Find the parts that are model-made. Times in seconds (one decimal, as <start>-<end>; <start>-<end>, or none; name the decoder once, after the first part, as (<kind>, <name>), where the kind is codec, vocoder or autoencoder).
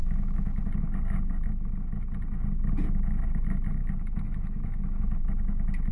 0.0-0.7 (autoencoder, DAC-VAE); 3.8-5.2